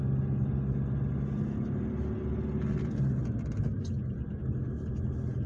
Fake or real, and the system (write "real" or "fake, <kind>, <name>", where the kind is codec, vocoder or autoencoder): real